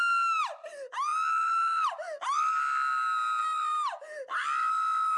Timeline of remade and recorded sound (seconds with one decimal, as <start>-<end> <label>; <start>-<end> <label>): 0.0-5.2 recorded